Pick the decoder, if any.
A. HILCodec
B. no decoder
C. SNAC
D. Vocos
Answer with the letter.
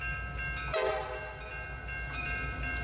B